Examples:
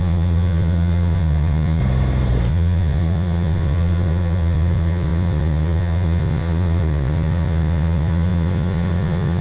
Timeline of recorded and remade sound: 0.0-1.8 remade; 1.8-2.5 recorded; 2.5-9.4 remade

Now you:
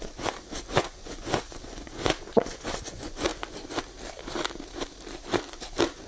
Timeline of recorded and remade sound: 0.0-3.3 remade; 3.3-6.1 recorded

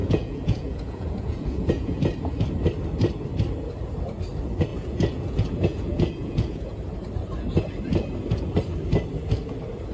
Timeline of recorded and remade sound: 0.0-2.0 remade; 2.0-4.7 recorded; 4.7-6.8 remade; 6.8-9.9 recorded